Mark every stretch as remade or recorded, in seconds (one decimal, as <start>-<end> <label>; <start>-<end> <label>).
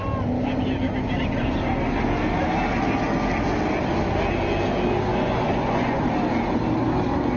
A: 0.0-5.1 recorded; 5.1-6.0 remade; 6.0-7.4 recorded